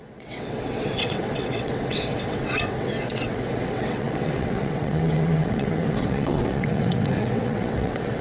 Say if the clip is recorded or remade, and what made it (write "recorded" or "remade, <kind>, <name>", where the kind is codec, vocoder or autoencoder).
remade, vocoder, WaveNeXt